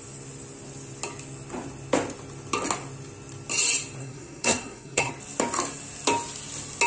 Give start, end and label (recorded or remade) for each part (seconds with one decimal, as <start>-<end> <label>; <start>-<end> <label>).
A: 0.0-4.0 recorded; 4.0-5.1 remade; 5.1-6.9 recorded